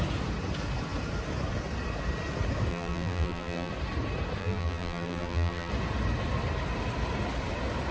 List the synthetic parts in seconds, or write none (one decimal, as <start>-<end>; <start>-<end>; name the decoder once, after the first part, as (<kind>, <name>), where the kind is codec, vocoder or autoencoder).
2.7-3.7 (vocoder, BigVGAN v2); 4.4-5.7